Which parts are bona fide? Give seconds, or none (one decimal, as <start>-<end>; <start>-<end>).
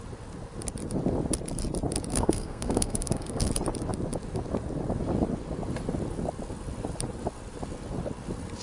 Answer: 0.0-2.1; 3.5-8.6